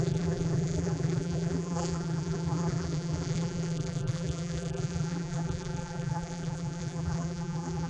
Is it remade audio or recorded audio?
remade